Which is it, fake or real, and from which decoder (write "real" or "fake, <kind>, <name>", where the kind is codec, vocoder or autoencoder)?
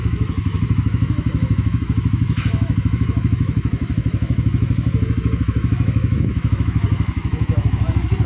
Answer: fake, autoencoder, DAC-VAE